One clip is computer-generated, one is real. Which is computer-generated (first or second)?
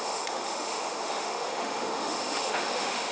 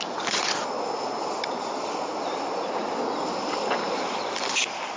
first